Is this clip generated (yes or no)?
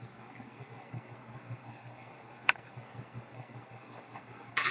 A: yes